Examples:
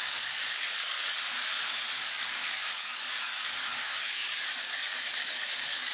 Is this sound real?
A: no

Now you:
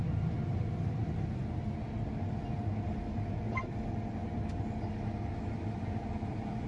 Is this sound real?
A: yes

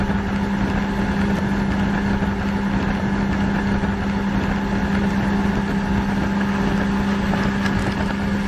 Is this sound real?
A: yes